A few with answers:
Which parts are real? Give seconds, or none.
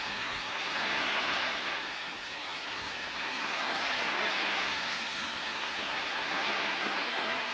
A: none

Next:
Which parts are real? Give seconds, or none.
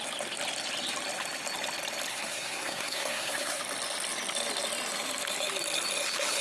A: 0.0-2.1; 3.6-6.4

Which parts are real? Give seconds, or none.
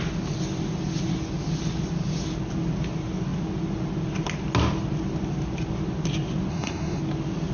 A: 0.0-6.5; 7.0-7.5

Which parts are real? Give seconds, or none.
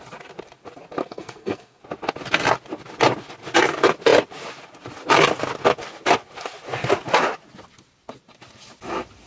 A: 0.0-1.0; 1.8-9.3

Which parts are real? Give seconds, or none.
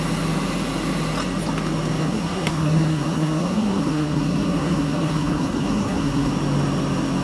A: 0.0-2.0; 6.3-7.2